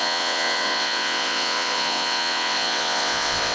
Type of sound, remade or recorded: remade